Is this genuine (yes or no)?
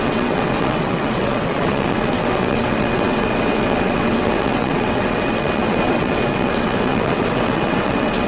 no